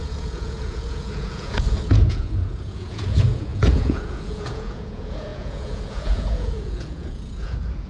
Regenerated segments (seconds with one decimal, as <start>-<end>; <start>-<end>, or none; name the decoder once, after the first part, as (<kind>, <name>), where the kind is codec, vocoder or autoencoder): 0.0-7.9 (vocoder, Vocos)